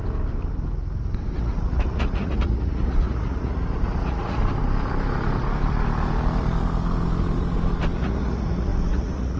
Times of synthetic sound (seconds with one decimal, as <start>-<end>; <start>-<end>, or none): 1.4-4.4; 8.0-9.4